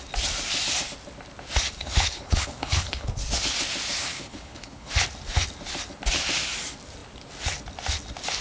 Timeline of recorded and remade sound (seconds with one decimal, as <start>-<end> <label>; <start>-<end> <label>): 0.0-1.8 recorded; 1.8-3.2 remade; 3.2-4.0 recorded; 4.0-4.9 remade; 4.9-8.4 recorded